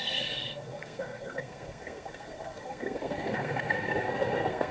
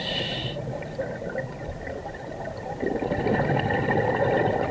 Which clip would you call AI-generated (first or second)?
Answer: first